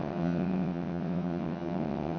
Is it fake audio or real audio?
fake